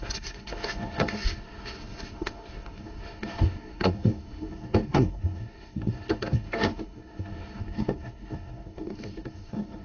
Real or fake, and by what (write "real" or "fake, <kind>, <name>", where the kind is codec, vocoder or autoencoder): fake, codec, SNAC